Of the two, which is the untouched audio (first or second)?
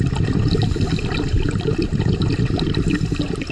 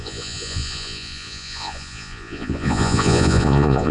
first